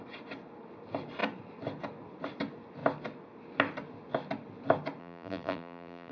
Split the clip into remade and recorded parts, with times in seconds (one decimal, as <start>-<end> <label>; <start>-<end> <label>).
0.0-5.0 recorded; 5.0-6.1 remade